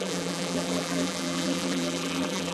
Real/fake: fake